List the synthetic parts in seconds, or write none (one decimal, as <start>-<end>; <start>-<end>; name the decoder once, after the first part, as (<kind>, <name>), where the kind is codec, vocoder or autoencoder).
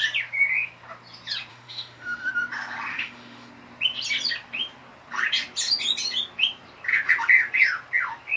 1.5-2.3 (autoencoder, DAC-VAE); 2.9-3.5